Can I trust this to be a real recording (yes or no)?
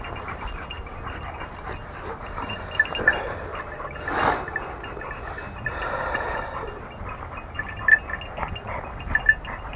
yes